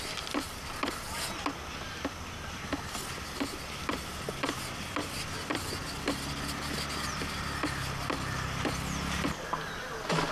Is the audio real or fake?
real